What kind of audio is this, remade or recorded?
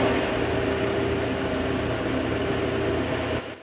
recorded